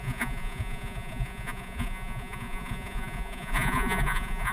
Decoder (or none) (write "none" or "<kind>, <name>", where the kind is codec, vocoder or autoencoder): vocoder, Vocos